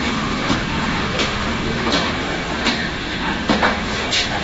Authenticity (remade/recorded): remade